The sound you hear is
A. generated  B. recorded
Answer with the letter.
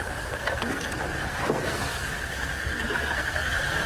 A